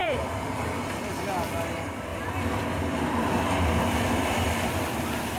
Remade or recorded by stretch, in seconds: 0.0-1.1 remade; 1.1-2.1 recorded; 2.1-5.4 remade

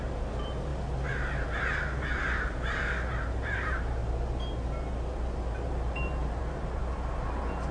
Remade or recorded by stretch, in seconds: 0.0-4.0 remade; 4.0-5.5 recorded; 5.5-6.8 remade; 6.8-7.7 recorded

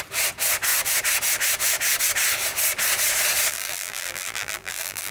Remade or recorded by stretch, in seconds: 0.0-3.5 recorded; 3.5-5.1 remade

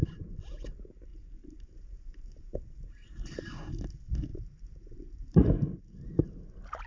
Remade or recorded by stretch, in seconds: 0.0-1.1 recorded; 1.1-3.9 remade; 3.9-4.3 recorded; 4.3-5.8 remade; 5.8-6.9 recorded

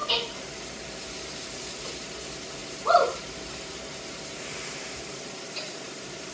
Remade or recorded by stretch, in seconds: 0.0-0.6 remade; 0.6-2.6 recorded; 2.6-6.3 remade

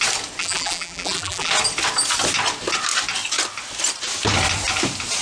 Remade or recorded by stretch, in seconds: 0.0-0.4 recorded; 0.4-1.5 remade; 1.5-5.2 recorded

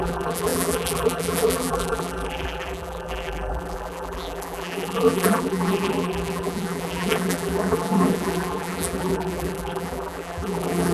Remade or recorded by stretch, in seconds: 0.0-10.9 remade

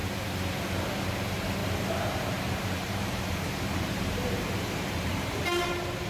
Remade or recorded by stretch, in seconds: 0.0-1.6 recorded; 1.6-5.3 remade; 5.3-6.1 recorded